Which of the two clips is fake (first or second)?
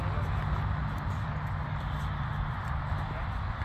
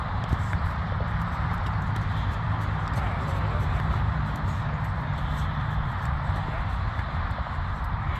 second